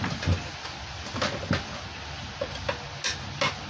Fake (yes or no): no